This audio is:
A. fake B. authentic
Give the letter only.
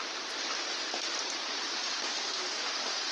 B